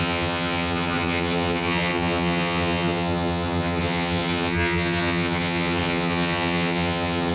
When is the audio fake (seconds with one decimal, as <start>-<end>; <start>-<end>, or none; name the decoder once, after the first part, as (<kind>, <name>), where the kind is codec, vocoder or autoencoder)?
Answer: 0.0-7.3 (vocoder, HiFi-GAN)